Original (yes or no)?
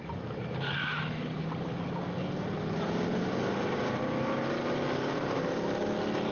yes